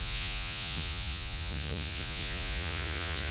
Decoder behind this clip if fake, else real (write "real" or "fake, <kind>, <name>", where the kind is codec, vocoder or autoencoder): fake, vocoder, Vocos